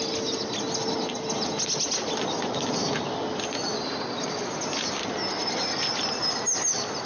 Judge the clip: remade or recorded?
recorded